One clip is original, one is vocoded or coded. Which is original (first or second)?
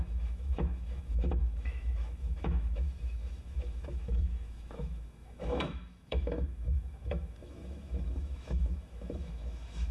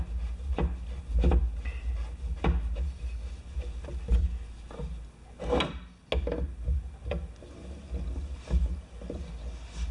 second